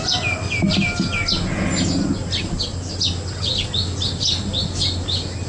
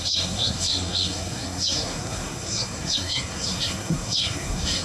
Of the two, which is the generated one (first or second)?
second